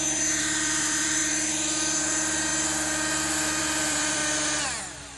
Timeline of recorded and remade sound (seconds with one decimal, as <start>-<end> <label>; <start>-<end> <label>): 0.0-2.5 remade; 2.5-3.6 recorded; 3.6-4.2 remade; 4.2-4.8 recorded; 4.8-5.2 remade